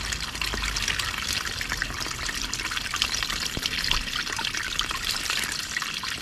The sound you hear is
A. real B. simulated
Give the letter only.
A